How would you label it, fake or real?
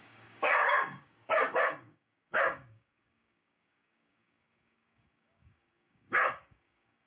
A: fake